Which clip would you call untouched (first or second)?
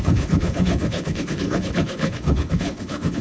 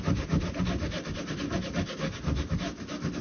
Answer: second